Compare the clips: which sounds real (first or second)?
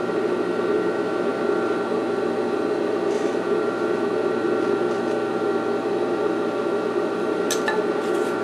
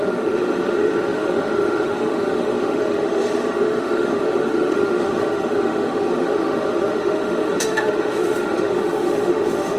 first